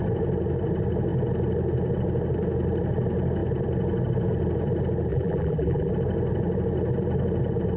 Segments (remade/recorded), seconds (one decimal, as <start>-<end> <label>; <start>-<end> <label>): 0.0-5.1 recorded; 5.1-5.9 remade; 5.9-7.8 recorded